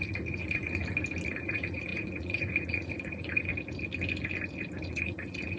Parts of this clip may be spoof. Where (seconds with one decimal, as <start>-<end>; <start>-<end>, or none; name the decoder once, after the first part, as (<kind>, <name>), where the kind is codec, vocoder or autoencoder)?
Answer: 0.0-0.8 (vocoder, Vocos); 1.3-3.5; 4.9-5.6